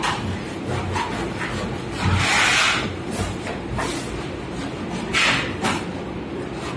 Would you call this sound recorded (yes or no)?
yes